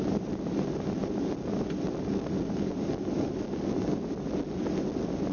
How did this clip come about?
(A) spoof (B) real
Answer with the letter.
B